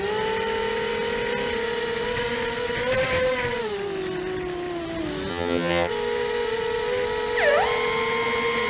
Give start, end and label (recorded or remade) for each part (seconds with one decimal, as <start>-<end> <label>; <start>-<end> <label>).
0.0-5.3 recorded; 5.3-5.9 remade; 5.9-8.7 recorded